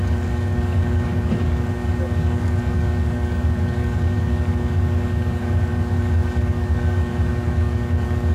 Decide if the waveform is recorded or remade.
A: remade